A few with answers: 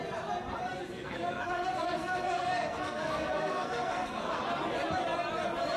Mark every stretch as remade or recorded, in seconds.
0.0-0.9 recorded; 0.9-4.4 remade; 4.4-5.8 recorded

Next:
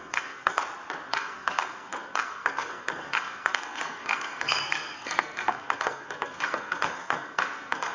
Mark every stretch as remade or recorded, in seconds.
0.0-0.6 remade; 0.6-1.1 recorded; 1.1-7.9 remade